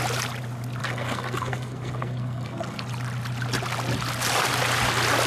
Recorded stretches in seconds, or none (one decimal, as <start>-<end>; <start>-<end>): 0.0-0.8; 2.8-5.3